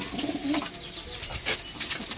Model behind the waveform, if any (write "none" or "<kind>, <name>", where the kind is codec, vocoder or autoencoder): none